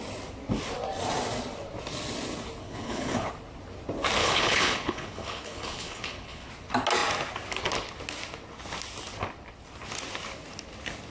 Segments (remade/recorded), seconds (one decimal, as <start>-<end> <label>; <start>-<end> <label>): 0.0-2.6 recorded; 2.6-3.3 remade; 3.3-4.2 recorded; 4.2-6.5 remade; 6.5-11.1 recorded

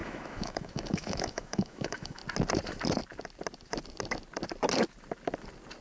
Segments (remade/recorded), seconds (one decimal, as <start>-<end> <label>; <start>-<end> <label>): 0.0-2.2 remade; 2.2-5.8 recorded

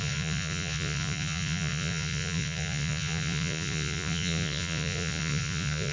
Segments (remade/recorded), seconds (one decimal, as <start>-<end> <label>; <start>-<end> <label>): 0.0-5.9 remade

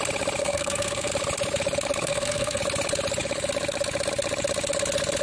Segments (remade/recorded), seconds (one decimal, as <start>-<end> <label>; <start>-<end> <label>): 0.0-0.4 recorded; 0.4-1.1 remade; 1.1-2.0 recorded; 2.0-2.6 remade; 2.6-5.2 recorded